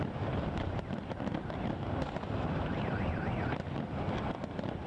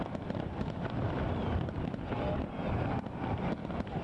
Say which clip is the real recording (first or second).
first